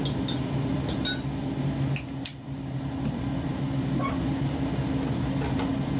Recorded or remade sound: recorded